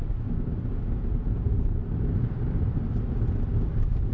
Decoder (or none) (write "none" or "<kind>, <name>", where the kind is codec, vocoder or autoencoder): none